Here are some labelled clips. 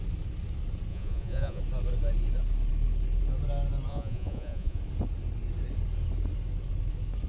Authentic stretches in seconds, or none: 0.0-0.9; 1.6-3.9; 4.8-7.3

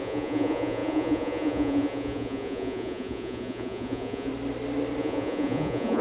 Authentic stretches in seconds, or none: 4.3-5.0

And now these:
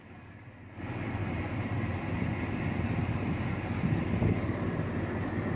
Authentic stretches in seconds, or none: 0.0-1.2; 2.0-3.0; 5.1-5.6

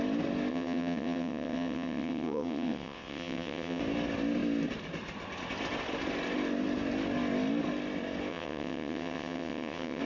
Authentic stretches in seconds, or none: 0.0-0.5; 3.8-8.3

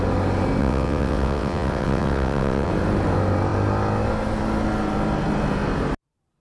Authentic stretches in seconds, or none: 0.0-0.6; 2.7-6.4

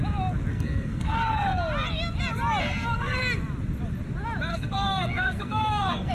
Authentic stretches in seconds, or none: 0.0-0.5; 1.6-2.6; 3.2-4.5